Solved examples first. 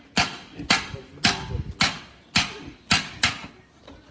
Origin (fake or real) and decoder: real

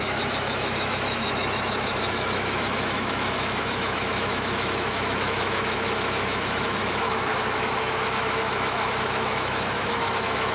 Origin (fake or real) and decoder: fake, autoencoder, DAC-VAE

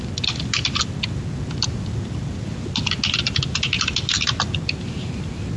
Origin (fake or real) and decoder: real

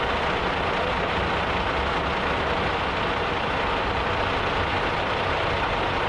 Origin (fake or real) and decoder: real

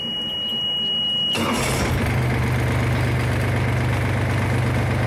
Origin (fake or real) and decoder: real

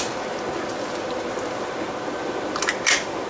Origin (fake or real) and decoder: real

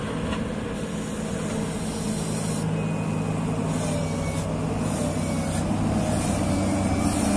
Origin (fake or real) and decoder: real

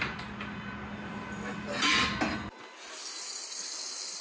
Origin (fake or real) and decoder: real